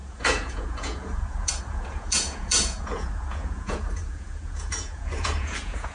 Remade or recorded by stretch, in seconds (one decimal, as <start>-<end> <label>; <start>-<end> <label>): 0.0-5.9 remade